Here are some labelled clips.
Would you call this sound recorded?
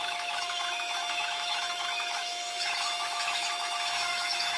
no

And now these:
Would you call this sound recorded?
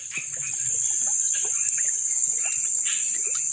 yes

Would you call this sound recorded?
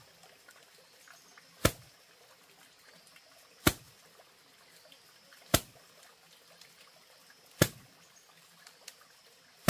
yes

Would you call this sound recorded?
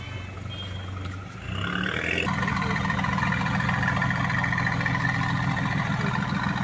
yes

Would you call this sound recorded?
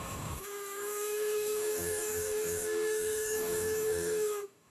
no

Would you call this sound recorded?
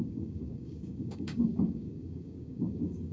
no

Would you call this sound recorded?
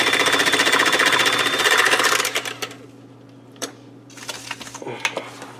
yes